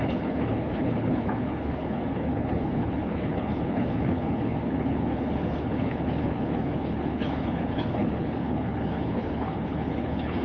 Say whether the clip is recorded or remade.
remade